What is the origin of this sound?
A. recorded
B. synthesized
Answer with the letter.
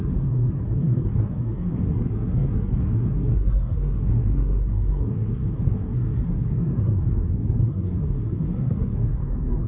B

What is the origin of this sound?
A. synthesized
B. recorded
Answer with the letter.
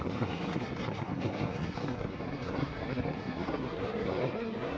A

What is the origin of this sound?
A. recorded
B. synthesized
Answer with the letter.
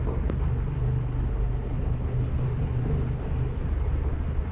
A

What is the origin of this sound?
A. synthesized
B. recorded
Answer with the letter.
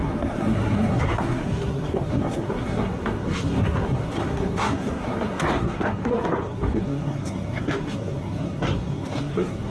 A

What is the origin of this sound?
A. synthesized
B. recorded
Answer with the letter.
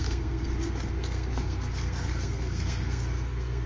A